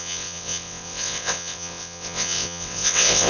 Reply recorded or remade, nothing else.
remade